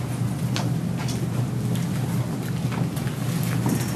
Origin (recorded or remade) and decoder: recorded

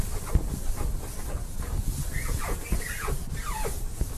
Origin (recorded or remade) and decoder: recorded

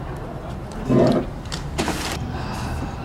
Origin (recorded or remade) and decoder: recorded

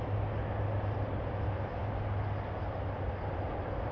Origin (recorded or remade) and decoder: recorded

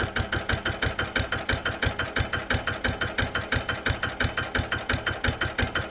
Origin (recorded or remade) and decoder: recorded